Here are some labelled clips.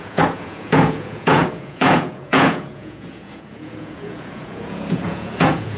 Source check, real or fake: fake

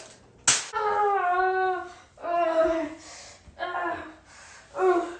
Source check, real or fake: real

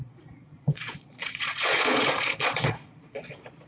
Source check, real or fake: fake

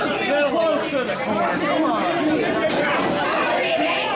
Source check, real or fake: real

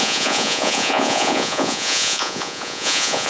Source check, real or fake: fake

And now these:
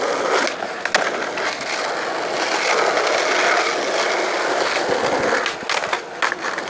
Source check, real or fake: real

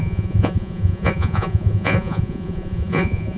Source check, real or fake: fake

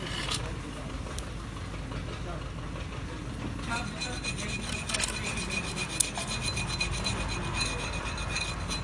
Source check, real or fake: real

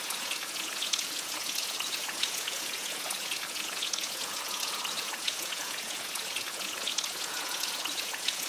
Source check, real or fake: fake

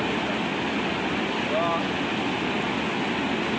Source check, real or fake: real